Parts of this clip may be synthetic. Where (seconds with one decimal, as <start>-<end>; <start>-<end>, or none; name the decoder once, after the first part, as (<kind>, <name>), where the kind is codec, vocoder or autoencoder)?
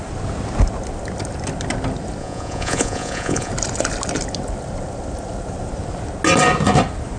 2.2-3.5 (vocoder, Vocos)